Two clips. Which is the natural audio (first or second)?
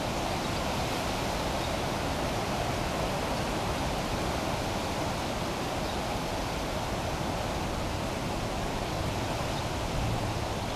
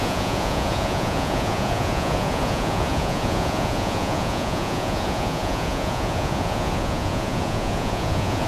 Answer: first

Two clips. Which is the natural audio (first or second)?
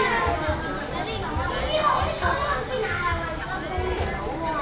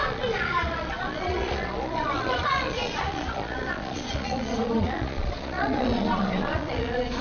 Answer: first